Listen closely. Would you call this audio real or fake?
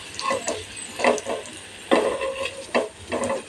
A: real